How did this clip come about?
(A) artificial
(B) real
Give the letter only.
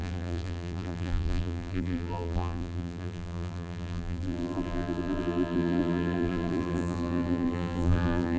A